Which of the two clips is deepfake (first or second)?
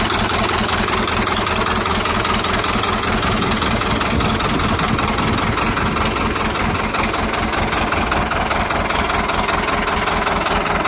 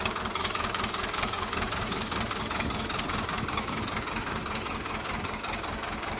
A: second